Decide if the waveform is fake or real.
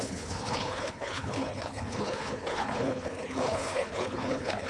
fake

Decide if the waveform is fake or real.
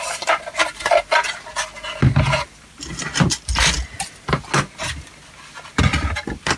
real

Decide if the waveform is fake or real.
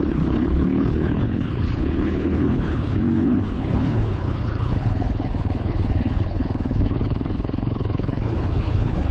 fake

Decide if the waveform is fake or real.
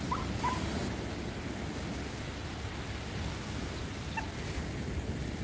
real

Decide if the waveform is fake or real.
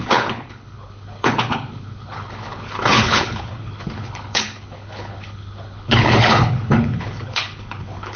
fake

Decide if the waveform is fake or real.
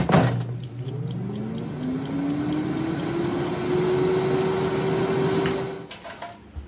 real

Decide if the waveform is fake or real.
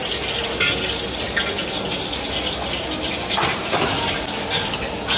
real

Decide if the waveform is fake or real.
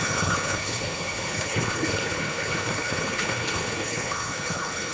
fake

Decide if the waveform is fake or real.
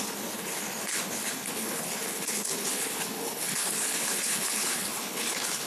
fake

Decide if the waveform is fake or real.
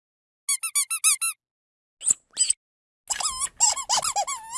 real